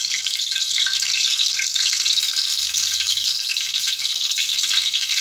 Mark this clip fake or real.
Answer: fake